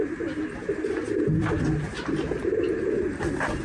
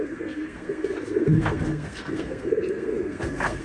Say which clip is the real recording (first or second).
first